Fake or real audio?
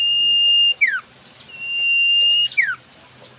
real